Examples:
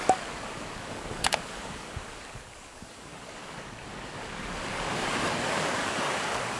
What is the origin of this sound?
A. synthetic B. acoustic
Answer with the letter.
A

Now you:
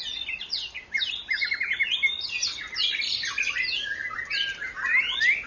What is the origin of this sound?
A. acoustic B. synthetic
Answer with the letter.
A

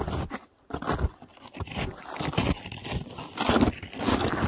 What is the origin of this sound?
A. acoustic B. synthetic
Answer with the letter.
A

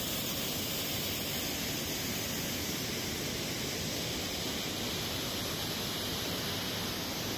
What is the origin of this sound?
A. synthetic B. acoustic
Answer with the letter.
B